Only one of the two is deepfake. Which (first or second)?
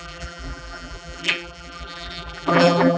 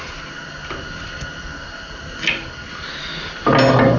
first